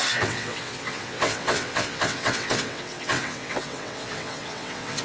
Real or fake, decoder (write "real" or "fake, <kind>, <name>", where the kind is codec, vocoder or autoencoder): fake, vocoder, WaveNeXt